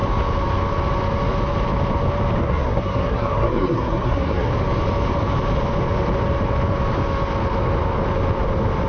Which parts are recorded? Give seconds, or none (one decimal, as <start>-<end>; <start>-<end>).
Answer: 0.0-2.4; 4.5-8.9